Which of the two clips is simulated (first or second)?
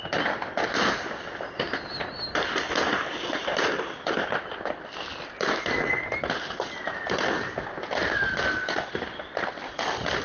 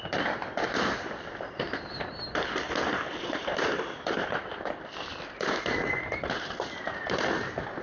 second